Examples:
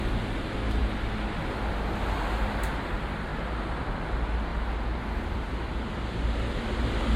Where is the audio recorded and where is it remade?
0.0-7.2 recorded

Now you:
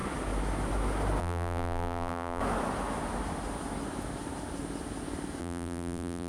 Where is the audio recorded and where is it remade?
0.0-1.2 recorded; 1.2-2.4 remade; 2.4-5.4 recorded; 5.4-6.3 remade